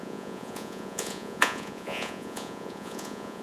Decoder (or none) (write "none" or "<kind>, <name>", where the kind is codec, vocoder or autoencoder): vocoder, Vocos